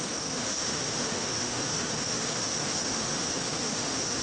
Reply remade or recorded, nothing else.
remade